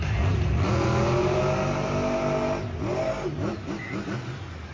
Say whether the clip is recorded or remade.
recorded